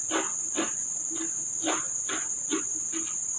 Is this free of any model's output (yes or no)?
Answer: yes